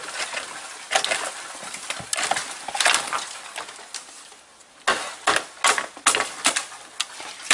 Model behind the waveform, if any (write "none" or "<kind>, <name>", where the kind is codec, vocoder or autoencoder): none